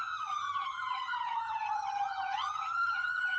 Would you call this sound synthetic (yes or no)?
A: yes